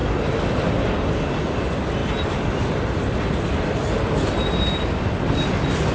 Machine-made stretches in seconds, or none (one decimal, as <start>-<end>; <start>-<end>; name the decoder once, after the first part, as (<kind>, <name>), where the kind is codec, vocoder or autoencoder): 2.0-5.0 (vocoder, BigVGAN v2)